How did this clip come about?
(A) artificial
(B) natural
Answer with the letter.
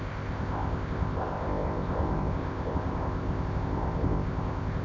A